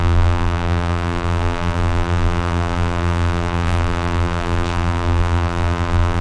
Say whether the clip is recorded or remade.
remade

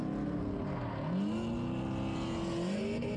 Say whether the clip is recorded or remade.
recorded